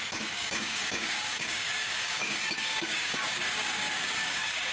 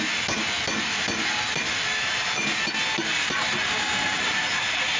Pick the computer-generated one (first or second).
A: first